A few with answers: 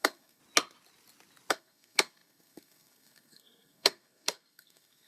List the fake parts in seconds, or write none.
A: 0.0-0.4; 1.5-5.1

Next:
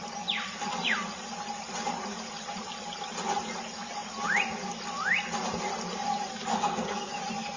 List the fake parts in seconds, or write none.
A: 6.5-7.1